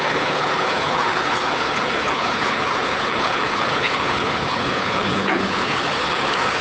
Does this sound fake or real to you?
fake